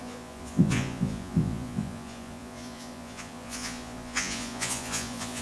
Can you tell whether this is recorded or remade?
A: remade